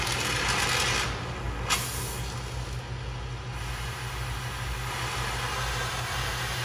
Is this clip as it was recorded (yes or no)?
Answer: yes